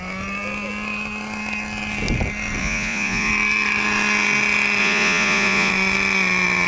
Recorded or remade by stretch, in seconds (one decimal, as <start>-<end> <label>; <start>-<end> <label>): 0.0-2.6 recorded; 2.6-3.3 remade; 3.3-4.8 recorded; 4.8-5.7 remade; 5.7-6.7 recorded